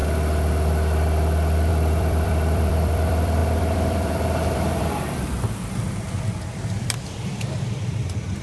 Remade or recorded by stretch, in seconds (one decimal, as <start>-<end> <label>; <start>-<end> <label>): 0.0-1.7 recorded; 1.7-8.4 remade